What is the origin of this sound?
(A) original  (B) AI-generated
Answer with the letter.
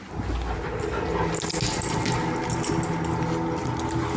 A